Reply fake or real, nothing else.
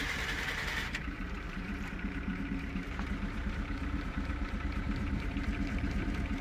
fake